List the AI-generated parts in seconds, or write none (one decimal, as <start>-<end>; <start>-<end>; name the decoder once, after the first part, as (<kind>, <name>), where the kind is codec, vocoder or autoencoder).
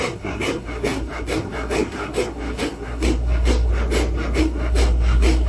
0.0-3.7 (codec, SNAC); 4.4-5.5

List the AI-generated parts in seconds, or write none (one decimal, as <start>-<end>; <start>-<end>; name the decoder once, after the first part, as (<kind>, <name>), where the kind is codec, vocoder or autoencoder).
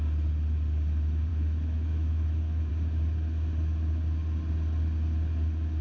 1.3-2.7 (autoencoder, DAC-VAE)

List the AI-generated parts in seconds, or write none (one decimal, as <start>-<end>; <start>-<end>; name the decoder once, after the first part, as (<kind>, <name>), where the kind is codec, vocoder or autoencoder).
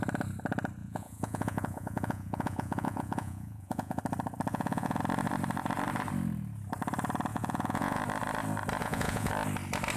0.8-4.0 (vocoder, Vocos); 4.5-5.0; 7.3-8.0; 8.8-9.3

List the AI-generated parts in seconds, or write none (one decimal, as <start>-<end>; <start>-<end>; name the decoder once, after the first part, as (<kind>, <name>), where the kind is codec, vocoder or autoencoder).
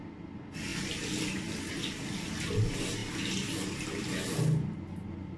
none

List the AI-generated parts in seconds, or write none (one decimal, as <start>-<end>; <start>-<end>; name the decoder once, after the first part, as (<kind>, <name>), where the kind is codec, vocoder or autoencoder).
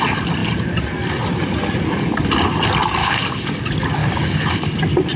3.0-3.6 (codec, DAC); 4.0-4.8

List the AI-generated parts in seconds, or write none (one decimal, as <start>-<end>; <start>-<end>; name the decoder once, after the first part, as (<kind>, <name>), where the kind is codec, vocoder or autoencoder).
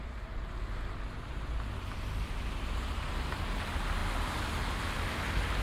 none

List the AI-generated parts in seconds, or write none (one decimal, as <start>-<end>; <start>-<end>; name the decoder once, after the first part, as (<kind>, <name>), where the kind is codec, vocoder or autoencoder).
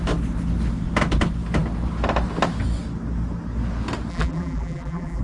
4.1-5.2 (vocoder, BigVGAN v2)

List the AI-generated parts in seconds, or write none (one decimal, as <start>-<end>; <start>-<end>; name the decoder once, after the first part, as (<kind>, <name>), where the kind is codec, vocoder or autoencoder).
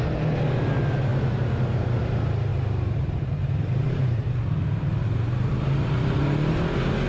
1.1-2.0 (vocoder, BigVGAN v2)